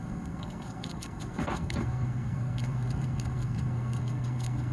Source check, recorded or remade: remade